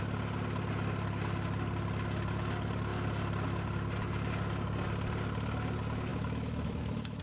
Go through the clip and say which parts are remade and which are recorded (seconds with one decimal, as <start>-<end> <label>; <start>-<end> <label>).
0.0-6.1 recorded; 6.1-7.2 remade